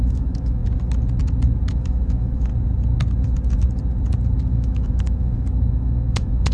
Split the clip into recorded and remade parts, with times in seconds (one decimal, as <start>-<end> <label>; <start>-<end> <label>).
0.0-0.6 remade; 0.6-1.7 recorded; 1.7-2.5 remade; 2.5-4.5 recorded; 4.5-6.5 remade